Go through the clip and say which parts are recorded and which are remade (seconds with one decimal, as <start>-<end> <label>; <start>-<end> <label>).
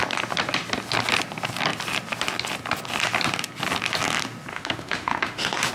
0.0-4.5 recorded; 4.5-5.7 remade